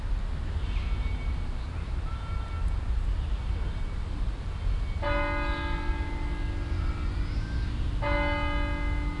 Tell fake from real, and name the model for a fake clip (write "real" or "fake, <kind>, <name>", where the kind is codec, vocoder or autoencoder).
real